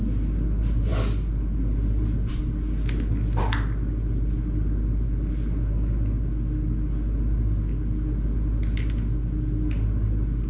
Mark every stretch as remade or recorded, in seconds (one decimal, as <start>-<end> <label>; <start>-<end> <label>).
0.0-10.5 recorded